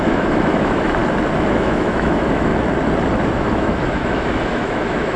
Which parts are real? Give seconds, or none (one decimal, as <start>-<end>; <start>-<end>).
1.0-1.5; 2.5-3.2